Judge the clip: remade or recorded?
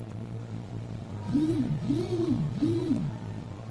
remade